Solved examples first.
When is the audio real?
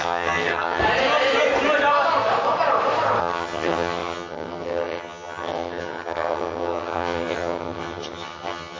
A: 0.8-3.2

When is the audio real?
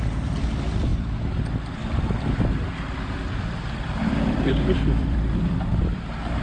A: 1.8-2.7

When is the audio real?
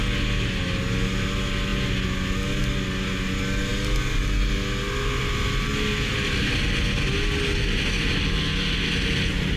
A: 0.0-9.6